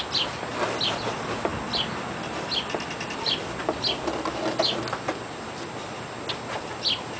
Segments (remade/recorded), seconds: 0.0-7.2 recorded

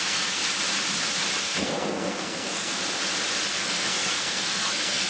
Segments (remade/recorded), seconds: 0.0-0.4 remade; 0.4-1.4 recorded; 1.4-2.8 remade; 2.8-3.5 recorded; 3.5-5.1 remade

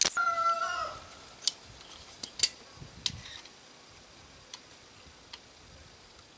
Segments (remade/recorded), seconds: 0.0-6.4 recorded

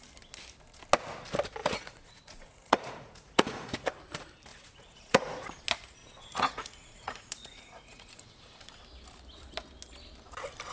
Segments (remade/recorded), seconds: 0.0-1.6 recorded; 1.6-3.9 remade; 3.9-4.5 recorded; 4.5-5.6 remade; 5.6-6.0 recorded; 6.0-8.7 remade; 8.7-10.7 recorded

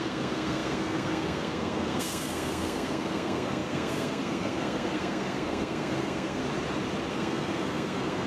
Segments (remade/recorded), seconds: 0.0-6.4 remade; 6.4-7.1 recorded; 7.1-8.3 remade

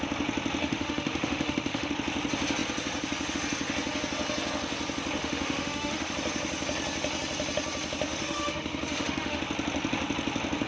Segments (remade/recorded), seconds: 0.0-0.6 recorded; 0.6-1.9 remade; 1.9-5.2 recorded; 5.2-6.1 remade; 6.1-8.1 recorded; 8.1-9.4 remade; 9.4-10.7 recorded

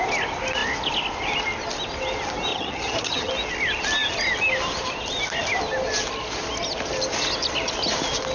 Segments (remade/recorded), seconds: 0.0-2.5 recorded; 2.5-3.3 remade; 3.3-8.3 recorded